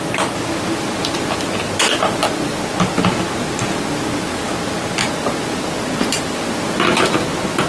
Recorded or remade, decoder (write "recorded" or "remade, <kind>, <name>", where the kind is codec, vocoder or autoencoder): recorded